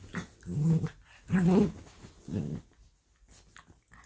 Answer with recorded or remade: recorded